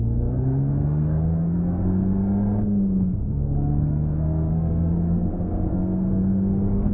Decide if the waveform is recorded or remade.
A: remade